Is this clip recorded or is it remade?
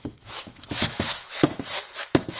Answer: remade